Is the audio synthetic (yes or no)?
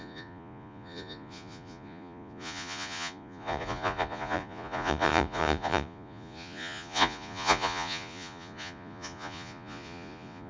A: yes